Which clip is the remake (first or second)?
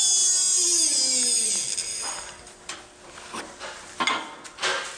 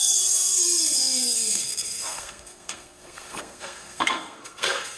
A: second